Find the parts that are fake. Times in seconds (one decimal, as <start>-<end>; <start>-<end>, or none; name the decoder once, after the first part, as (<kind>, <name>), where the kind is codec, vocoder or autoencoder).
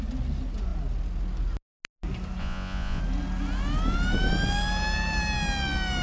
2.4-3.0 (vocoder, Vocos)